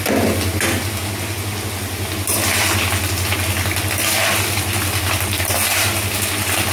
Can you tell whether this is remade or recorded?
recorded